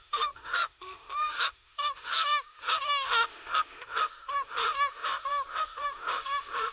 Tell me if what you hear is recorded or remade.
remade